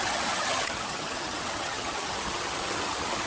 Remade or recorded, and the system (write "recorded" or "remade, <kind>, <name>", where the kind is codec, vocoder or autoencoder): remade, vocoder, HiFi-GAN